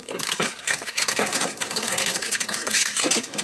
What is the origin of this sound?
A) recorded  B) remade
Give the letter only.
B